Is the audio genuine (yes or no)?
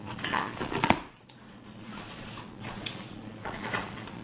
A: no